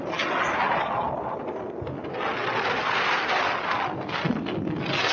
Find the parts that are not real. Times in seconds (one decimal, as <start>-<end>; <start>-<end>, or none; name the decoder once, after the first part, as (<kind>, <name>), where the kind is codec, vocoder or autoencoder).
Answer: none